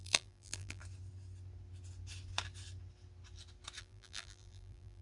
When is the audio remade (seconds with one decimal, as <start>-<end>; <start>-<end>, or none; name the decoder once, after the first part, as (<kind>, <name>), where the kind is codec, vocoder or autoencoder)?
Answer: 0.0-0.8 (vocoder, BigVGAN v2); 3.8-5.0